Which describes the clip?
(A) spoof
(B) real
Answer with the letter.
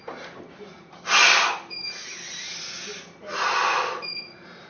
B